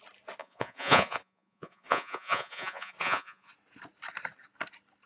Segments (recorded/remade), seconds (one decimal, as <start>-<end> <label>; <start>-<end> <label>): 0.0-0.4 recorded; 0.4-3.5 remade; 3.5-5.1 recorded

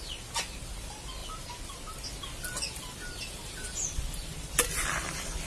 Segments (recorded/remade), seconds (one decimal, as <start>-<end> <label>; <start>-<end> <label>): 0.0-5.5 recorded